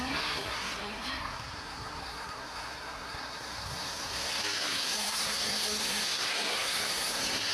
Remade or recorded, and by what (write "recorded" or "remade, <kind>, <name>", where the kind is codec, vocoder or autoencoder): remade, codec, SNAC